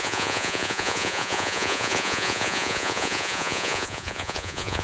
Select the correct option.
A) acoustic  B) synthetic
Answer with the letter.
B